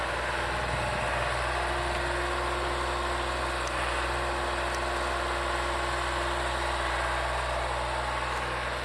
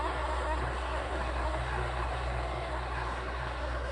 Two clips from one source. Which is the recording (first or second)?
first